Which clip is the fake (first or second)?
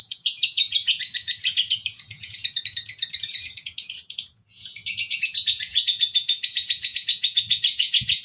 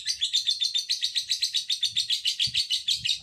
first